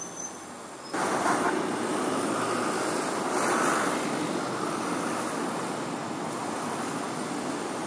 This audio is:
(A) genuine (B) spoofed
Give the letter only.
A